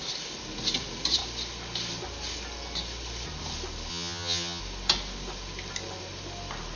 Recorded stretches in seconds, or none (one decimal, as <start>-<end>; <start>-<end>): 0.0-3.9; 4.6-6.8